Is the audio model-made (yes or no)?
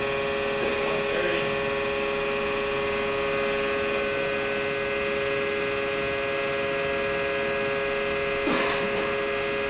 no